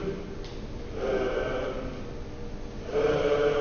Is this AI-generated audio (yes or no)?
no